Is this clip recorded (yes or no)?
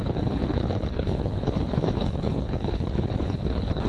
no